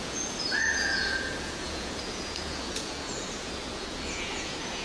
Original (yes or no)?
no